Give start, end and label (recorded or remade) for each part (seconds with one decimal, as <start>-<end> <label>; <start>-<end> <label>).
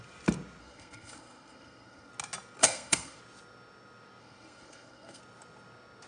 0.0-0.6 recorded; 0.6-2.1 remade; 2.1-2.6 recorded; 2.6-3.2 remade; 3.2-4.2 recorded; 4.2-5.2 remade; 5.2-6.1 recorded